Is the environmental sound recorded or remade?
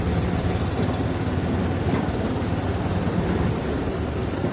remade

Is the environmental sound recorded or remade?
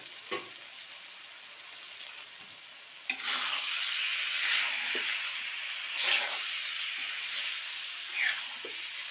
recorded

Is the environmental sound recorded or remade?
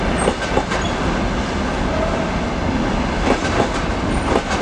recorded